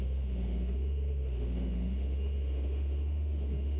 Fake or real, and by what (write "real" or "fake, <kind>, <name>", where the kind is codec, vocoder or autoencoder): fake, autoencoder, DAC-VAE